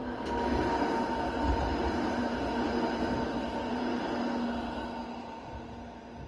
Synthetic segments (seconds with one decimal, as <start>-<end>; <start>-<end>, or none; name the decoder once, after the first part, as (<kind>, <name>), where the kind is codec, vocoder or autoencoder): none